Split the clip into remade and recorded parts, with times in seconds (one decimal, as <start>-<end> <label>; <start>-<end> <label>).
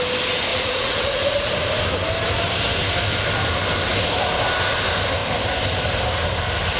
0.0-0.5 recorded; 0.5-1.5 remade; 1.5-6.8 recorded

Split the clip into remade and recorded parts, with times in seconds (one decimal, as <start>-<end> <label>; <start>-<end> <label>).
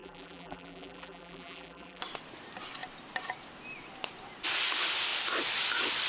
0.0-2.0 remade; 2.0-6.1 recorded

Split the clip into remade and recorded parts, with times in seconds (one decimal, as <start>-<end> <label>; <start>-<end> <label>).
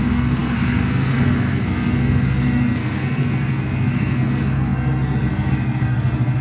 0.0-6.4 remade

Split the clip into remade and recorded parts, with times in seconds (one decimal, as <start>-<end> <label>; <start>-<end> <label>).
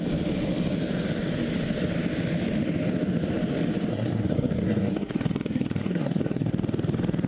0.0-3.9 recorded; 3.9-6.5 remade; 6.5-7.3 recorded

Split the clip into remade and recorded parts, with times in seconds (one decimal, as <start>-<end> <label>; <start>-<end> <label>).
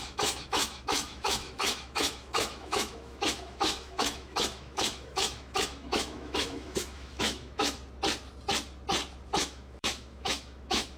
0.0-7.8 remade; 7.8-9.4 recorded; 9.4-11.0 remade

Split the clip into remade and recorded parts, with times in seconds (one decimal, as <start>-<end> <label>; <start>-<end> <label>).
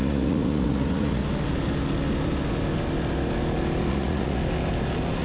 0.0-1.2 remade; 1.2-3.9 recorded; 3.9-4.4 remade; 4.4-5.2 recorded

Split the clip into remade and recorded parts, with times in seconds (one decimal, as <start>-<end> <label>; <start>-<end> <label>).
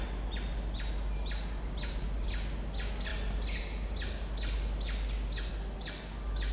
0.0-6.5 recorded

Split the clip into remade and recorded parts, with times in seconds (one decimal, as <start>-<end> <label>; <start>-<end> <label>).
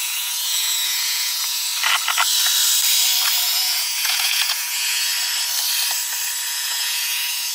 0.0-1.7 remade; 1.7-3.4 recorded; 3.4-5.1 remade; 5.1-6.5 recorded; 6.5-7.5 remade